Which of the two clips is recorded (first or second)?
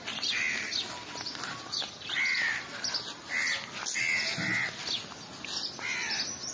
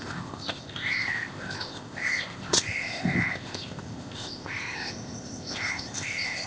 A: first